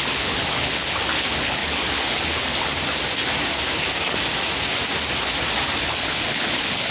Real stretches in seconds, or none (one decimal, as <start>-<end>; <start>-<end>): 2.7-5.8